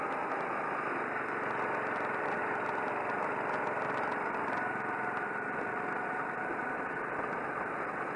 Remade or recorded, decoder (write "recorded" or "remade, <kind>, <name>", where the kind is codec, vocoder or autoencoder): recorded